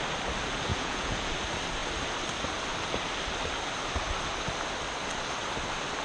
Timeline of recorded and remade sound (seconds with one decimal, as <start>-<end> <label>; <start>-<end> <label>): 0.0-0.7 recorded; 0.7-1.3 remade; 1.3-6.0 recorded